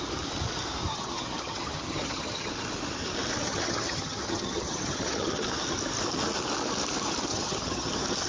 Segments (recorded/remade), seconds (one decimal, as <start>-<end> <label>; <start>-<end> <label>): 0.0-0.9 recorded; 0.9-2.5 remade; 2.5-3.4 recorded; 3.4-5.4 remade; 5.4-7.3 recorded; 7.3-7.9 remade; 7.9-8.3 recorded

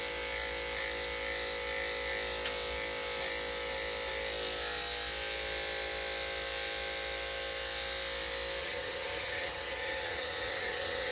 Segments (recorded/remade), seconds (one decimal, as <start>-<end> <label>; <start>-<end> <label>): 0.0-8.6 recorded; 8.6-11.1 remade